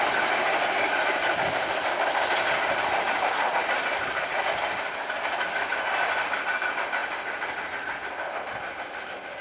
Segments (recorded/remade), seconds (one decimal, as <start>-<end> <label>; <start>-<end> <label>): 0.0-7.0 recorded; 7.0-8.4 remade; 8.4-9.4 recorded